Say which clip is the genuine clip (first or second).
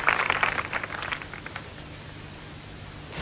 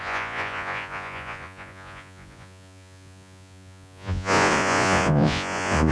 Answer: first